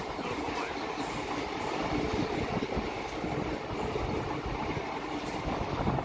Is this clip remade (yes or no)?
no